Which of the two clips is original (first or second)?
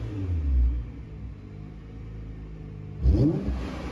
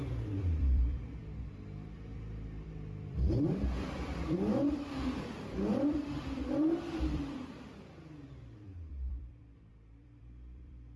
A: first